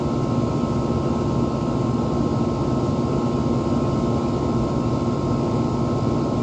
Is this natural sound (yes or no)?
yes